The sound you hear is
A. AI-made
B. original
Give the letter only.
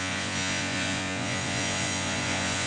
A